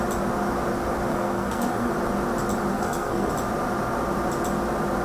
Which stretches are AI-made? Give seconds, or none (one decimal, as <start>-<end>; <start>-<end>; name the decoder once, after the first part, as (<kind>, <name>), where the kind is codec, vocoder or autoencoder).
1.1-1.9 (codec, SNAC); 2.7-3.3